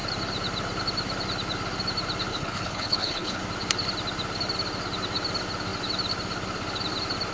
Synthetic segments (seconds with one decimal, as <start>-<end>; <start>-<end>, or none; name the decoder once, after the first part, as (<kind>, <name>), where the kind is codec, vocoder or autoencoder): 2.3-3.4 (codec, HILCodec)